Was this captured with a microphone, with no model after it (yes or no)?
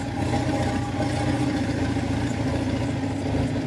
yes